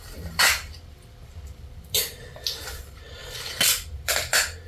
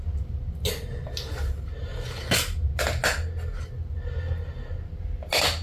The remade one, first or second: first